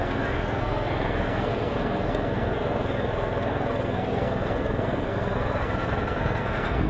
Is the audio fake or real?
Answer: fake